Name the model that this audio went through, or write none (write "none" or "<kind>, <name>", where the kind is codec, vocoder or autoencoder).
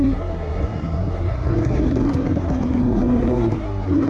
codec, SNAC